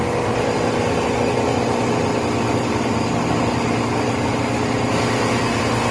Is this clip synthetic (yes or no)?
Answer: no